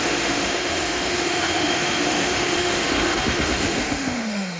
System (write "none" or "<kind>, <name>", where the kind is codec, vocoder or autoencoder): autoencoder, DAC-VAE